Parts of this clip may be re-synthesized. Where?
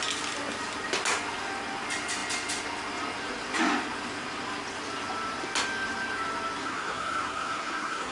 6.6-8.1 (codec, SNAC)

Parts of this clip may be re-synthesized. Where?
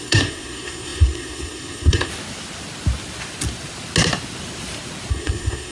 0.0-2.1 (codec, SNAC); 5.1-5.7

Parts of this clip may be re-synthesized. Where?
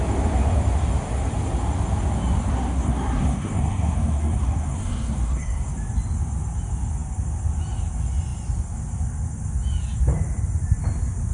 2.5-5.7 (codec, SNAC)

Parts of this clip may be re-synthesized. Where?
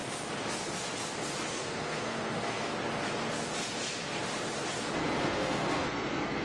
1.5-2.7 (codec, SNAC); 5.2-6.4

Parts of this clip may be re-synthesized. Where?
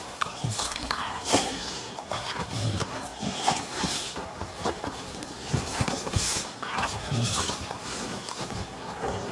0.0-9.3 (codec, SNAC)